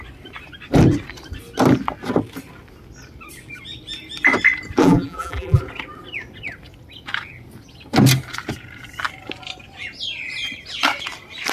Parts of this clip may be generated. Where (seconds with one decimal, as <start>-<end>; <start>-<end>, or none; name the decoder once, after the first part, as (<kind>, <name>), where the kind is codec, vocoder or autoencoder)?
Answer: 4.8-5.6 (vocoder, BigVGAN v2)